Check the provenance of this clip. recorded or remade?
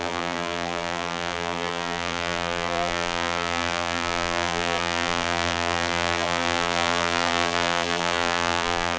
remade